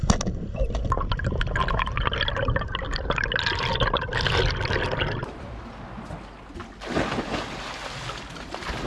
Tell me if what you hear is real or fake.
real